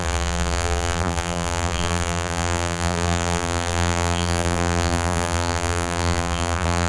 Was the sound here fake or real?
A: fake